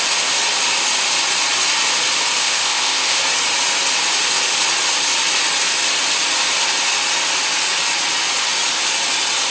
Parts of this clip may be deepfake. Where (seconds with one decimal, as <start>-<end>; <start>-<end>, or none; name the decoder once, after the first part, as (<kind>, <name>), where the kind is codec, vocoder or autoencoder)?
2.4-3.2 (codec, ZipCodec)